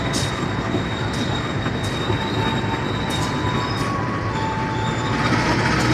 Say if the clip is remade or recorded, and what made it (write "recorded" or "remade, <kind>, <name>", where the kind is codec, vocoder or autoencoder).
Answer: recorded